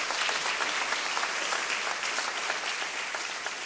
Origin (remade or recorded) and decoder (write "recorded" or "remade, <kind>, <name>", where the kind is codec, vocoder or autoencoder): recorded